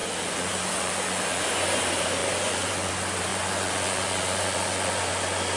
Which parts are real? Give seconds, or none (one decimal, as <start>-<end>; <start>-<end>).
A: 1.8-2.2; 2.9-3.3; 5.0-5.6